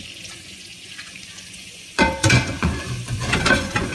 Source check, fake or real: fake